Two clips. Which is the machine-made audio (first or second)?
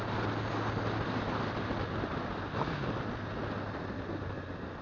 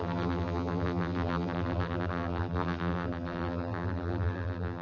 second